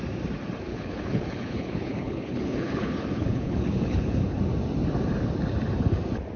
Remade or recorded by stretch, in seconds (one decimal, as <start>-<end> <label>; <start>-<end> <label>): 0.0-0.7 recorded; 0.7-4.4 remade; 4.4-6.4 recorded